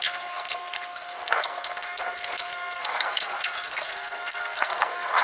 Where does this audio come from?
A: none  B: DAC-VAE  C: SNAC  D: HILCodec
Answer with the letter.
C